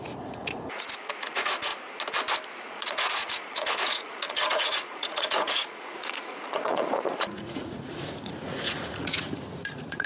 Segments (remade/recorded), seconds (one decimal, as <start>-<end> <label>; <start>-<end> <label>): 0.0-1.7 remade; 1.7-2.5 recorded; 2.5-10.1 remade